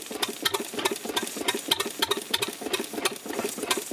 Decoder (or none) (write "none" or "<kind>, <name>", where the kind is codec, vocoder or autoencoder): none